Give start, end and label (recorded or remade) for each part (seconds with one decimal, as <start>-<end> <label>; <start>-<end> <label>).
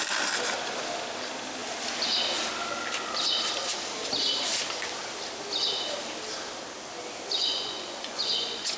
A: 0.0-7.5 recorded; 7.5-8.8 remade